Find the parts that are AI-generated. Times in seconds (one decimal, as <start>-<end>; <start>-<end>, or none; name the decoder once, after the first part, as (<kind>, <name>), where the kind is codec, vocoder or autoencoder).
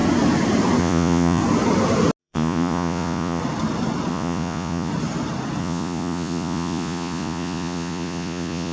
0.8-1.4 (vocoder, Vocos); 2.2-3.4; 4.1-4.9; 5.6-8.7